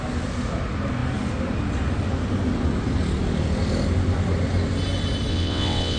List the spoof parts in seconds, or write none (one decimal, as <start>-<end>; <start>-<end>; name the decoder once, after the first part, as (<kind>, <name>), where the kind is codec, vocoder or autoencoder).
5.3-6.0 (vocoder, WaveNeXt)